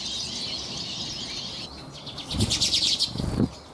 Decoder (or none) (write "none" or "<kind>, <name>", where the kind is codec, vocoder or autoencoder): none